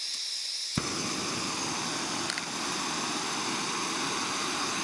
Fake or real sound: real